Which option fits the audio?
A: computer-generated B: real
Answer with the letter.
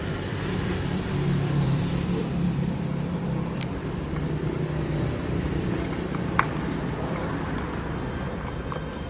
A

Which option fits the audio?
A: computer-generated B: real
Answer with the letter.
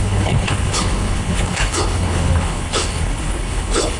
A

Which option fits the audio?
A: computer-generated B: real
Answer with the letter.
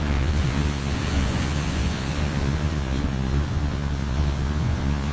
A